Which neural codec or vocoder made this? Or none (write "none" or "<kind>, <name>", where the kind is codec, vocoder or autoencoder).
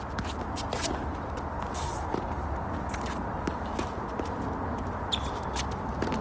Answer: none